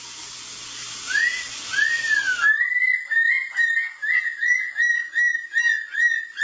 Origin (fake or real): real